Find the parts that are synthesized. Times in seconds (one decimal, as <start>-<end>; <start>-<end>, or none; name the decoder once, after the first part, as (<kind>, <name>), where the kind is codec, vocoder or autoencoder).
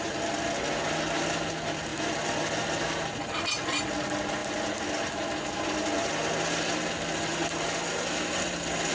1.9-3.0 (vocoder, BigVGAN v2); 4.4-6.1